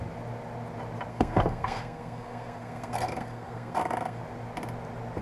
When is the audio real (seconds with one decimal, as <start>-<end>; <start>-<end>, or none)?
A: 0.0-1.1; 4.2-5.2